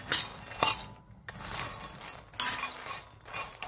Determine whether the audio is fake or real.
real